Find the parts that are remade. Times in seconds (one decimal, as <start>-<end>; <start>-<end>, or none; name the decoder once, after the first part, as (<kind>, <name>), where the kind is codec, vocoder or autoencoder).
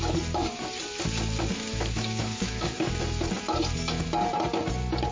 1.7-2.9 (autoencoder, DAC-VAE)